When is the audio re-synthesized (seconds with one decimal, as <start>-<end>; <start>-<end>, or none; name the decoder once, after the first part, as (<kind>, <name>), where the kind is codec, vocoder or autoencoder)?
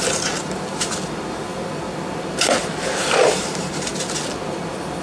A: 2.6-3.9 (vocoder, BigVGAN v2)